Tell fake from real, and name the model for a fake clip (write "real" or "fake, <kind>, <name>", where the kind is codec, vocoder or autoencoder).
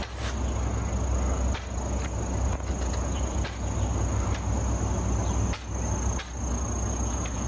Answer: real